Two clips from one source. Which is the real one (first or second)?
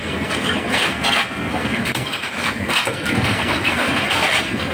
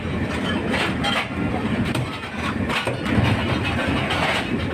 second